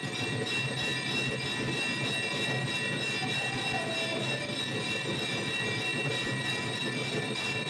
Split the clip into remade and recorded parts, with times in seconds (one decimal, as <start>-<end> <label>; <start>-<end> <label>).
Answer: 0.0-7.7 recorded